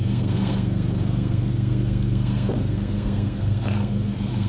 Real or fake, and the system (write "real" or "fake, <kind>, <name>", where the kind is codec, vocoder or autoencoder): fake, codec, SNAC